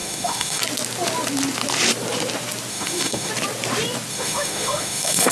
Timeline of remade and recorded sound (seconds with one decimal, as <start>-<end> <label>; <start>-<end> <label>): 0.0-0.6 remade; 0.6-2.7 recorded; 2.7-3.3 remade; 3.3-4.1 recorded; 4.1-5.3 remade